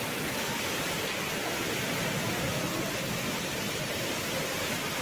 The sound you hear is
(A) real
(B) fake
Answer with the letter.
A